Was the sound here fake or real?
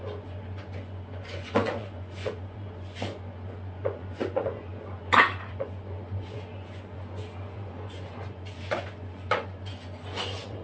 fake